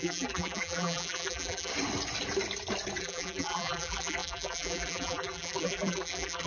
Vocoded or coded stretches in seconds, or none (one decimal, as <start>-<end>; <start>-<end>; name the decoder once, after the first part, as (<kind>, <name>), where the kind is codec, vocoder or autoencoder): 0.0-1.7 (vocoder, BigVGAN v2); 3.0-6.5